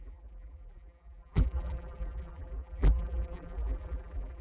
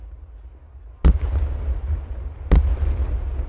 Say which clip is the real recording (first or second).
second